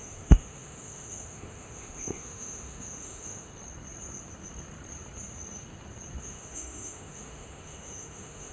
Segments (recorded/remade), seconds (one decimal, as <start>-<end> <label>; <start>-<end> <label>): 0.0-3.5 remade; 3.5-6.2 recorded; 6.2-8.5 remade